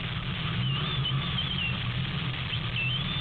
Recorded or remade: recorded